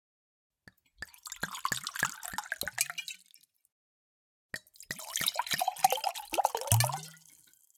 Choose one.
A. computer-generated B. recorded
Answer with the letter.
B